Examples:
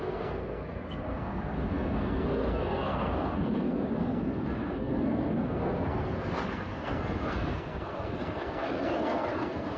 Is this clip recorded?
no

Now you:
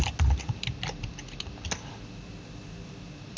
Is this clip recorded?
yes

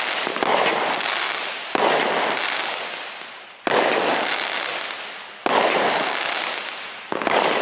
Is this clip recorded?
yes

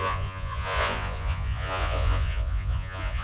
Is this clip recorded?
no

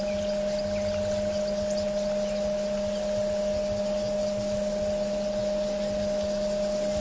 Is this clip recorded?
yes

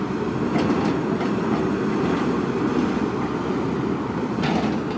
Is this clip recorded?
yes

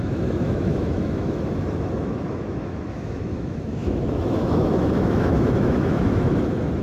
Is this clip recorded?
no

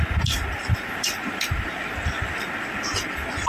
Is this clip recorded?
no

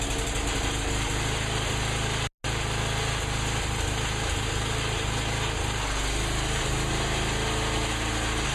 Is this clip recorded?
yes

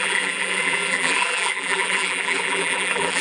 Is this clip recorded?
no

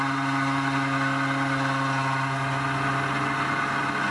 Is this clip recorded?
yes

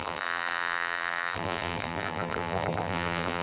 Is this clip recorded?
no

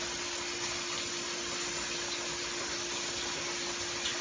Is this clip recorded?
yes